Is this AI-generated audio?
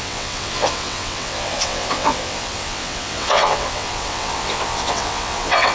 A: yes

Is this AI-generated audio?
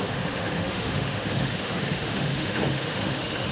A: yes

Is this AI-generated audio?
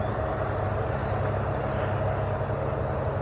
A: no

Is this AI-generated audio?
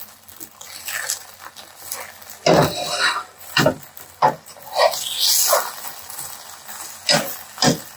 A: no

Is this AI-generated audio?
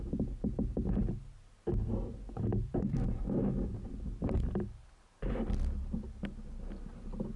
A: no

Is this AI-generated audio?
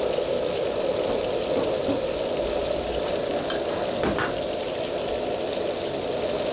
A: no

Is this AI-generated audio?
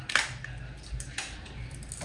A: no